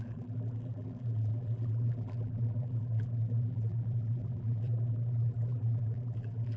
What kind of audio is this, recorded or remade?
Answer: remade